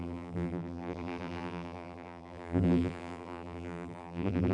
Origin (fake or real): fake